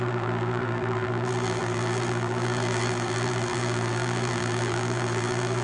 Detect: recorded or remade remade